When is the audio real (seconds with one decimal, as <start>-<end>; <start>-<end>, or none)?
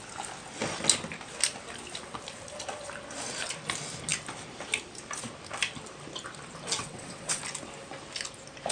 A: 0.0-6.8; 7.4-8.7